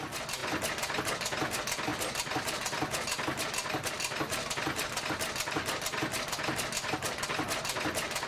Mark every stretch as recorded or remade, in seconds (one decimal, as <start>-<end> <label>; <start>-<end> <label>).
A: 0.0-8.3 recorded